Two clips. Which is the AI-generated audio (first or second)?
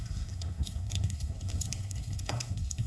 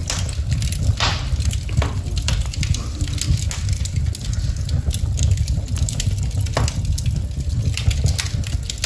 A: first